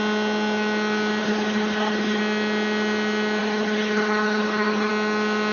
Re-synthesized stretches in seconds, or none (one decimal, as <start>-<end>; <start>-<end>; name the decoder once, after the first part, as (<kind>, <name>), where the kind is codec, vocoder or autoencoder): 1.2-2.2 (codec, HILCodec); 3.4-4.9

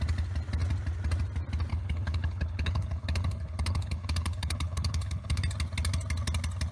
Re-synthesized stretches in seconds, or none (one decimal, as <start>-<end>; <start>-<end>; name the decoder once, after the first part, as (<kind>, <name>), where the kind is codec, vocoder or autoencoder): 1.7-5.4 (codec, HILCodec)